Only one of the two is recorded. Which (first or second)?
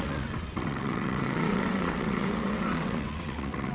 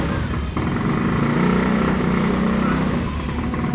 second